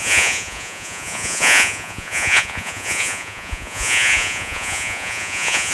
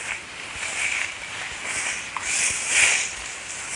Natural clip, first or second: second